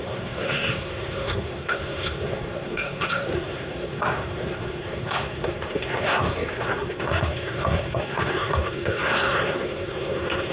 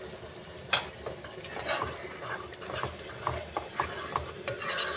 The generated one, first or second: first